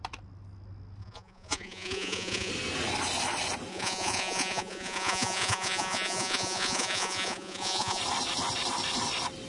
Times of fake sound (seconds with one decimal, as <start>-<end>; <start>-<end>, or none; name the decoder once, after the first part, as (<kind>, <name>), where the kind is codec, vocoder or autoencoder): 1.0-2.5 (vocoder, Vocos); 3.7-8.0